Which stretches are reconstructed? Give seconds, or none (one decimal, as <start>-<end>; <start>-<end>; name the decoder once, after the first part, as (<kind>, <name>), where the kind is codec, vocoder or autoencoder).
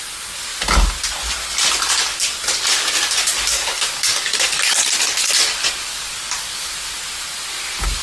3.5-4.9 (codec, DAC); 5.9-6.7